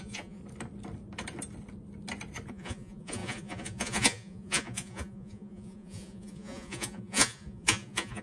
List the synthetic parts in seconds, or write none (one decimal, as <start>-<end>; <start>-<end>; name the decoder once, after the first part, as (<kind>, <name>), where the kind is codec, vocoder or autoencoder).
0.0-0.4 (vocoder, Vocos); 2.5-8.2